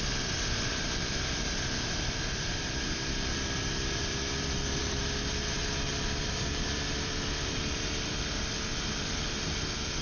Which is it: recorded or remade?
remade